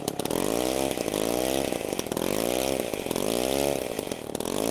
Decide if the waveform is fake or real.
real